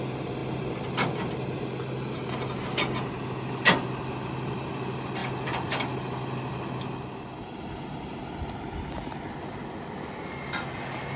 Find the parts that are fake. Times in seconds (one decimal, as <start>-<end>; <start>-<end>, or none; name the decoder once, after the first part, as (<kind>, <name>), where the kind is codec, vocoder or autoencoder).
none